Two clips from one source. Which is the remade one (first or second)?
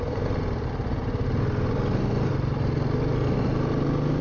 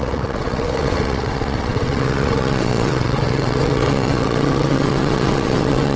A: second